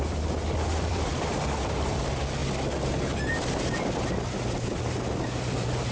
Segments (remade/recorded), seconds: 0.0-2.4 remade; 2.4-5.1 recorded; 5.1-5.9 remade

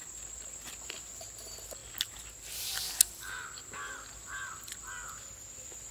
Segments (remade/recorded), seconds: 0.0-5.9 recorded

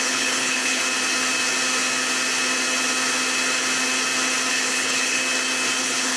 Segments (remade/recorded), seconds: 0.0-0.8 remade; 0.8-4.5 recorded; 4.5-5.2 remade; 5.2-5.8 recorded; 5.8-6.2 remade

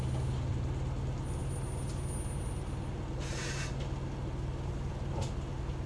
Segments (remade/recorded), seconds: 0.0-5.9 recorded

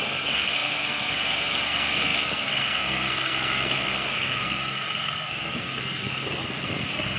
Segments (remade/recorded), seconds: 0.0-7.2 remade

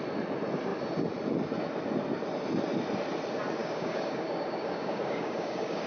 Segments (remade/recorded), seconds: 0.0-3.6 recorded; 3.6-5.9 remade

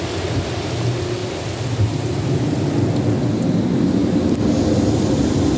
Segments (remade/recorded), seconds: 0.0-1.2 recorded; 1.2-2.1 remade; 2.1-5.6 recorded